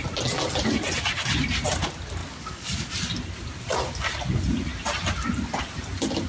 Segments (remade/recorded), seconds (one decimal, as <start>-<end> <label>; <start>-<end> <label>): 0.0-2.2 recorded; 2.2-2.9 remade; 2.9-6.3 recorded